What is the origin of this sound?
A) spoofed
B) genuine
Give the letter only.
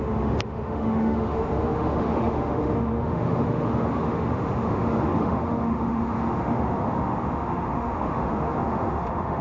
A